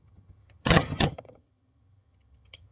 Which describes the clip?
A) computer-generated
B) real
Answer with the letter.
A